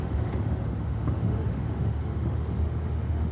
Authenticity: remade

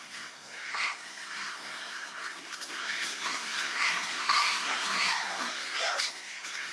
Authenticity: remade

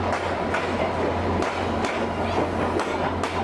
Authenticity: recorded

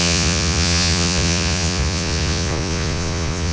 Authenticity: remade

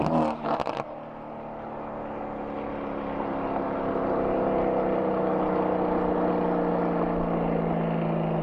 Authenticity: recorded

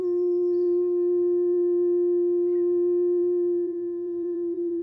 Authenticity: remade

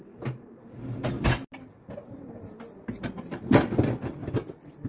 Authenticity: recorded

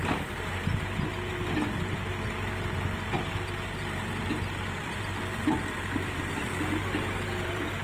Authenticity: remade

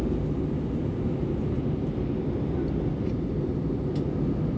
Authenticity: recorded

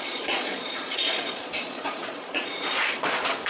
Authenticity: remade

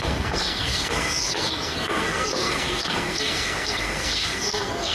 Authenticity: remade